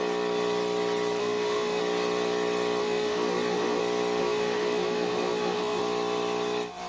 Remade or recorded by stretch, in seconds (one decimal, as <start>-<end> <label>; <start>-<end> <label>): 0.0-1.2 recorded; 1.2-1.8 remade; 1.8-2.8 recorded; 2.8-3.8 remade; 3.8-4.2 recorded; 4.2-5.8 remade; 5.8-6.9 recorded